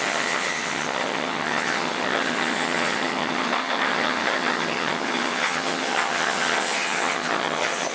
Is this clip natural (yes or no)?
no